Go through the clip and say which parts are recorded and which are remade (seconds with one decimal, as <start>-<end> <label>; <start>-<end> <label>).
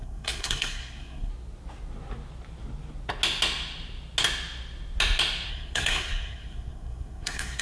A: 0.0-1.3 remade; 1.3-5.5 recorded; 5.5-7.6 remade